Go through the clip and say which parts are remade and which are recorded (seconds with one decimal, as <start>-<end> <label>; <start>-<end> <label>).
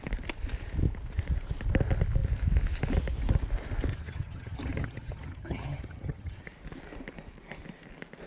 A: 0.0-3.9 recorded; 3.9-6.4 remade; 6.4-8.3 recorded